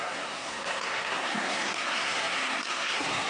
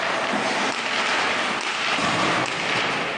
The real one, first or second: second